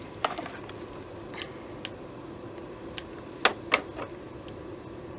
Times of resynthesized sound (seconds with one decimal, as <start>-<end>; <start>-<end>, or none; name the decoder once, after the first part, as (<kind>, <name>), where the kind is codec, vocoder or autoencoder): none